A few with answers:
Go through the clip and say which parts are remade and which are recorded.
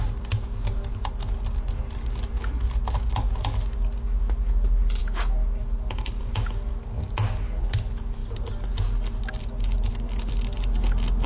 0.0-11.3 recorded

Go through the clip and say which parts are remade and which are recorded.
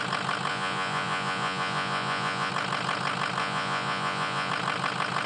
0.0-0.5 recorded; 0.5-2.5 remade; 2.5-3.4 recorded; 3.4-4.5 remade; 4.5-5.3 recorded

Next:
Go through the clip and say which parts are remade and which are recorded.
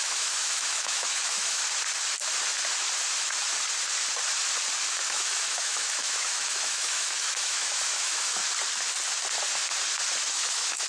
0.0-1.6 remade; 1.6-4.9 recorded; 4.9-8.4 remade; 8.4-10.3 recorded; 10.3-10.9 remade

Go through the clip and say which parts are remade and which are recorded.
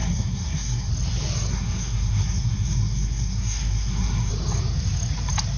0.0-0.9 remade; 0.9-1.5 recorded; 1.5-4.3 remade; 4.3-5.6 recorded